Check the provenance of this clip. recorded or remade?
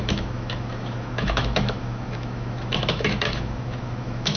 remade